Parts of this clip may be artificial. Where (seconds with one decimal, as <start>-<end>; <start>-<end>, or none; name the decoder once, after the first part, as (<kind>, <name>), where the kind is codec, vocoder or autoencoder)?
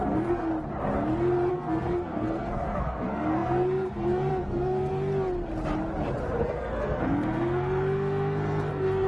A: 0.0-0.5 (codec, SNAC); 1.5-4.9; 6.4-9.1